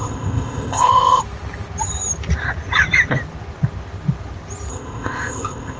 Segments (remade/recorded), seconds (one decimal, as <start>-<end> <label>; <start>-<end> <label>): 0.0-1.2 remade; 1.2-4.7 recorded; 4.7-5.8 remade